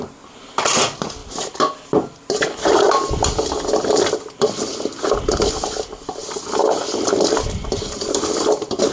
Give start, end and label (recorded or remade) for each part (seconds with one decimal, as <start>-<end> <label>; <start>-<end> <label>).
0.0-8.9 recorded